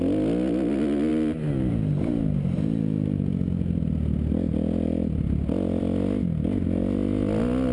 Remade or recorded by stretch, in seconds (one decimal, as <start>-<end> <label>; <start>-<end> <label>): 0.0-5.0 recorded; 5.0-5.8 remade; 5.8-7.7 recorded